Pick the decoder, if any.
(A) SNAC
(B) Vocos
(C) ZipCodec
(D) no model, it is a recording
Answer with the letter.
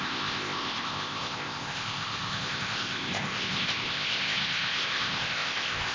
C